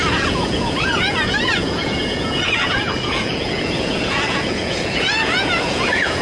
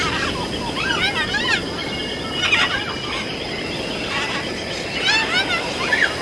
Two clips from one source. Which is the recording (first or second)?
second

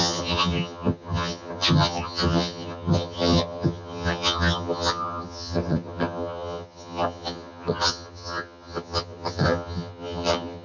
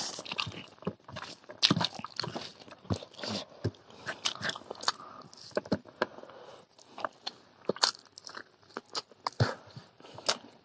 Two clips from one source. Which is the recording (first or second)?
second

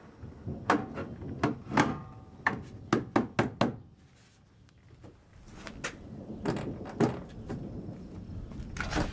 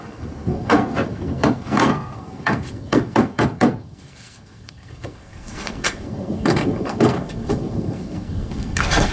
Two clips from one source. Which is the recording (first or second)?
first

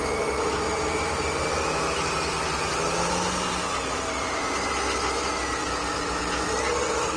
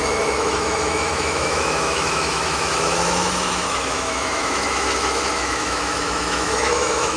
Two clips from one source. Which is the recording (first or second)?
first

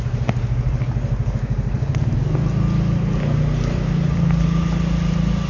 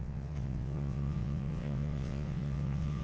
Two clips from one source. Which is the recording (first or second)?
first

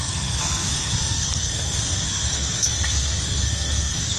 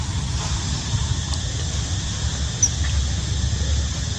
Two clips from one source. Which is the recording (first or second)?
second